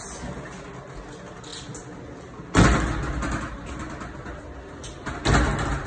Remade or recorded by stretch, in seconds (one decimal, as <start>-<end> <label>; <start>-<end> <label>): 0.0-5.9 recorded